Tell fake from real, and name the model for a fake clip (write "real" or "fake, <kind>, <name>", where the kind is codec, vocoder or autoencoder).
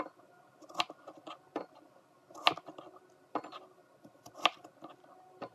real